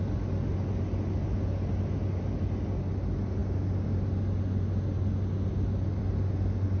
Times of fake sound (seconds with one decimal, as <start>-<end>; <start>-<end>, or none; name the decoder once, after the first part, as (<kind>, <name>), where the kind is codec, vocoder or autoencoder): none